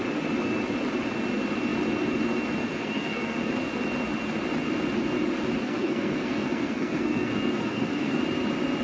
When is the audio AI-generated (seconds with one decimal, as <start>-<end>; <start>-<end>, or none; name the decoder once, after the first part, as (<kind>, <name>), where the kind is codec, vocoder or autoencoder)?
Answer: 2.8-3.4 (codec, SNAC); 5.6-8.2